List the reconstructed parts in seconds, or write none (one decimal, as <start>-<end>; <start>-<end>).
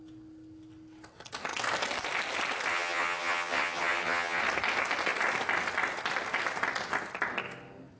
2.7-4.4